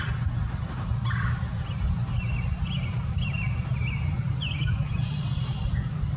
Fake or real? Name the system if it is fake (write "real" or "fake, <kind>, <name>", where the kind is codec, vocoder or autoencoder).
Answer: real